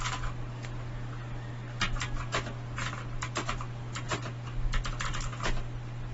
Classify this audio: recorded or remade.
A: recorded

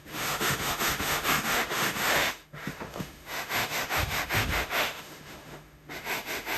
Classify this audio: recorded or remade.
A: remade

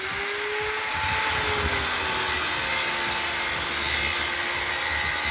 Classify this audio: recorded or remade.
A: recorded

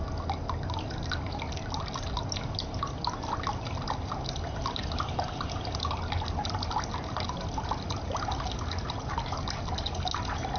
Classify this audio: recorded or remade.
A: recorded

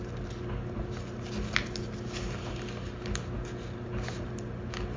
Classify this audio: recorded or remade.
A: recorded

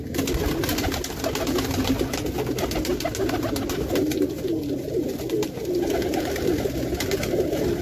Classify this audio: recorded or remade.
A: recorded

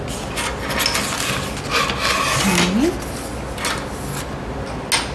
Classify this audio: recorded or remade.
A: recorded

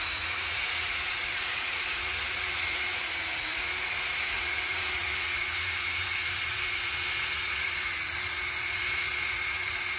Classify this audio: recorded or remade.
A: remade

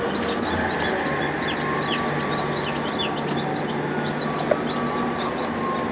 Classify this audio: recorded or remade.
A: recorded